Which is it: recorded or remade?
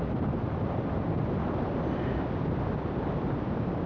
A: recorded